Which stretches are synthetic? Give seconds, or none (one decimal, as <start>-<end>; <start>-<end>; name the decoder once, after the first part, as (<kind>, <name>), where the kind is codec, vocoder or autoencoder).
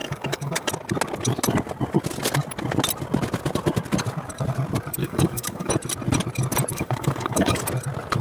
0.0-0.7 (codec, DAC); 5.0-5.7; 6.7-7.6